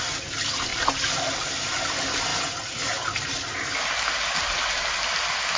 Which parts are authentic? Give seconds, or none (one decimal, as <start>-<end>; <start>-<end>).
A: 0.0-5.6